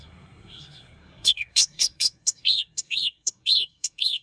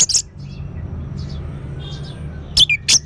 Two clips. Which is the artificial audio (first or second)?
first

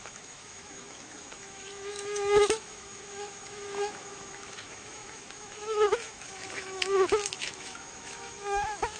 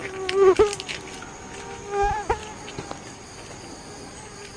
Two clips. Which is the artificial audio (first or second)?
first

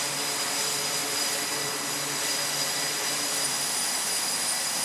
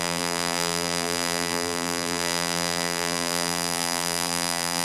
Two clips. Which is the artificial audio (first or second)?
second